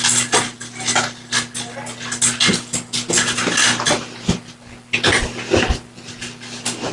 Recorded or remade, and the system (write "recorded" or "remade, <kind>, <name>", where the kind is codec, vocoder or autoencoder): recorded